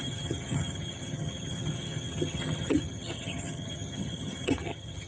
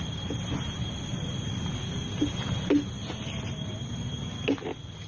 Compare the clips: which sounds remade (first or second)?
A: first